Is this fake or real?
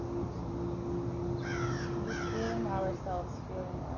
real